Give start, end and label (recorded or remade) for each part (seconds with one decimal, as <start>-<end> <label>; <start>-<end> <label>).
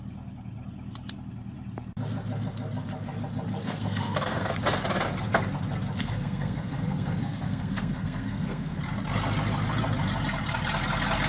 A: 0.0-3.6 recorded; 3.6-4.5 remade; 4.5-6.0 recorded; 6.0-8.8 remade; 8.8-11.3 recorded